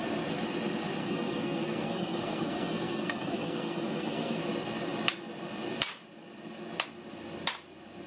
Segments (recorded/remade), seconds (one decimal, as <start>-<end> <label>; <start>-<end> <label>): 0.0-1.0 recorded; 1.0-4.4 remade; 4.4-8.1 recorded